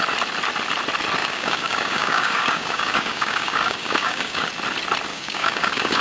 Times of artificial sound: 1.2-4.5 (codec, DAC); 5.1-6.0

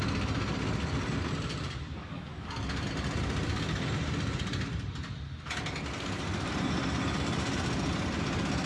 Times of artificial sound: 1.8-2.5 (codec, DAC)

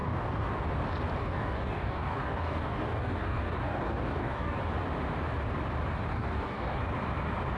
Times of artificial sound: 0.0-0.5 (codec, DAC); 1.2-4.6; 6.1-6.8

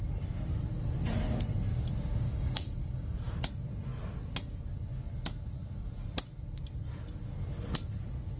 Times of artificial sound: 1.7-3.4 (codec, DAC)